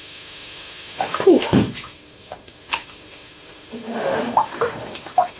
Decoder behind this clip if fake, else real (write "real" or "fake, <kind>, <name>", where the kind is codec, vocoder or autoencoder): fake, autoencoder, DAC-VAE